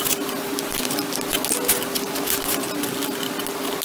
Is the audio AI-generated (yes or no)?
no